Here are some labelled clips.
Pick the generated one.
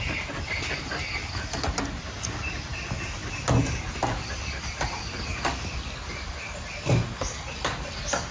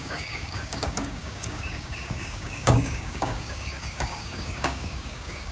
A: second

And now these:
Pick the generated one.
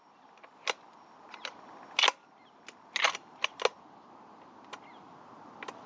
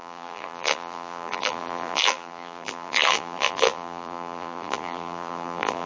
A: second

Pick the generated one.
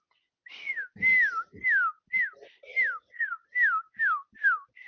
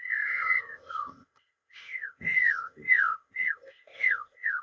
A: second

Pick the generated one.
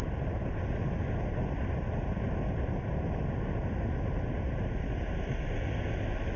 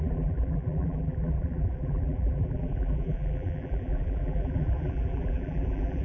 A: second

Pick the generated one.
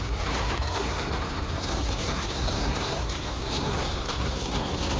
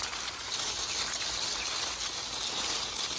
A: first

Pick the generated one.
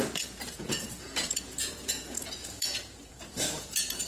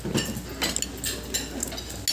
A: first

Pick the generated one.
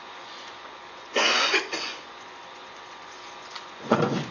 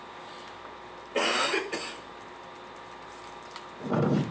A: first